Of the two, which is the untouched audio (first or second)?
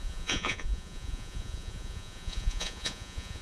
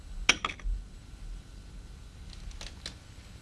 second